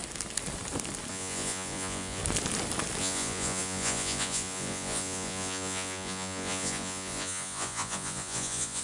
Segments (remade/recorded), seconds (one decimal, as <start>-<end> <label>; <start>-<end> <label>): 0.0-1.1 recorded; 1.1-2.2 remade; 2.2-3.0 recorded; 3.0-8.8 remade